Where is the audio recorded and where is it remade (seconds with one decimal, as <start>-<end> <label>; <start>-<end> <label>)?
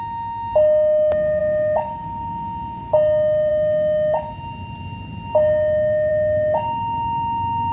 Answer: 0.0-7.7 recorded